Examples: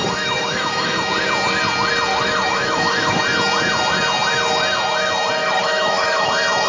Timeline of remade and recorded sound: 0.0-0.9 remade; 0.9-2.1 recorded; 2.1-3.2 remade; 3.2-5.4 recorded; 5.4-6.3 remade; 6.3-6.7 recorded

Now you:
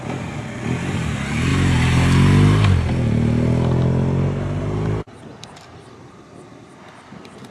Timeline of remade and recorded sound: 0.0-7.5 recorded

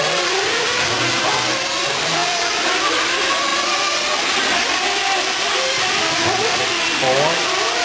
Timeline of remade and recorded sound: 0.0-3.5 remade; 3.5-5.8 recorded; 5.8-7.8 remade

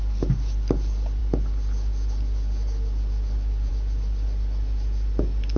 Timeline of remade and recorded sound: 0.0-5.6 recorded

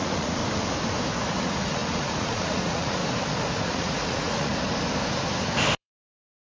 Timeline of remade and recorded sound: 0.0-0.4 remade; 0.4-1.4 recorded; 1.4-3.0 remade; 3.0-3.7 recorded; 3.7-4.5 remade; 4.5-5.8 recorded; 5.8-6.4 remade

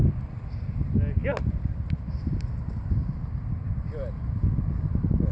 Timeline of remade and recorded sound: 0.0-5.3 recorded

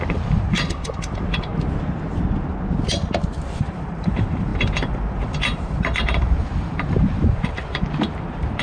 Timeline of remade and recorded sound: 0.0-1.5 remade; 1.5-3.2 recorded; 3.2-8.6 remade